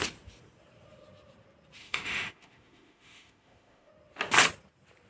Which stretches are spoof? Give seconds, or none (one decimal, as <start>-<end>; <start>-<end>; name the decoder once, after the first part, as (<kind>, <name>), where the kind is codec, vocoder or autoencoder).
1.8-3.9 (autoencoder, DAC-VAE)